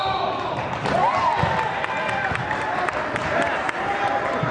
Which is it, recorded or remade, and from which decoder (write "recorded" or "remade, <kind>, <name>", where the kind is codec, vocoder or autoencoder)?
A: recorded